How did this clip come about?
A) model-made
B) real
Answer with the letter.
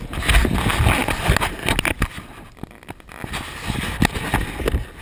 B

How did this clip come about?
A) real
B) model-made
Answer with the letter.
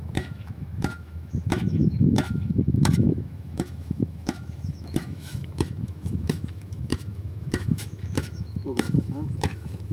B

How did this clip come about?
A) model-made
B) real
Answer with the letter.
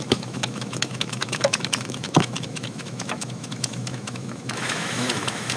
A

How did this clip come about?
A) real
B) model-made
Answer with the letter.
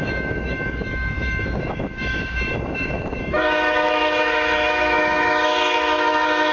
B